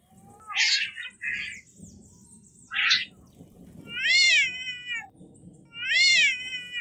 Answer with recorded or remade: recorded